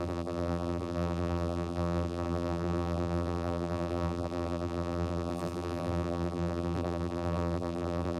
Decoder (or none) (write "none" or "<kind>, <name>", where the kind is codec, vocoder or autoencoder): vocoder, BigVGAN v2